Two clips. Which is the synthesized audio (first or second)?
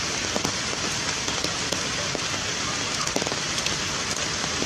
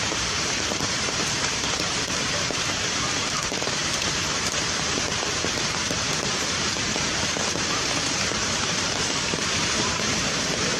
second